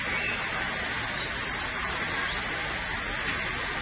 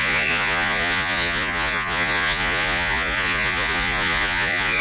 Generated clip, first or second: second